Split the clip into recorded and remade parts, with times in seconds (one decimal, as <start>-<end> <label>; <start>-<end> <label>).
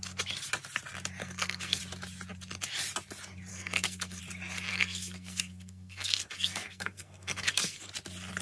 0.0-1.2 recorded; 1.2-1.8 remade; 1.8-3.5 recorded; 3.5-4.2 remade; 4.2-4.7 recorded; 4.7-7.9 remade; 7.9-8.4 recorded